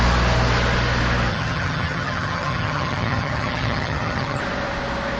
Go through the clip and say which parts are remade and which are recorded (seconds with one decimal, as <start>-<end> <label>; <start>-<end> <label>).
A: 0.0-1.3 recorded; 1.3-4.4 remade; 4.4-5.2 recorded